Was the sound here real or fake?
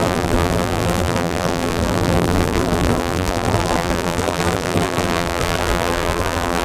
fake